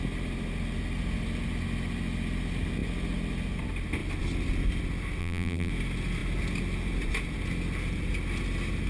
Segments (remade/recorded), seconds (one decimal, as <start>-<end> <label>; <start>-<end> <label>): 0.0-5.2 recorded; 5.2-5.7 remade; 5.7-8.9 recorded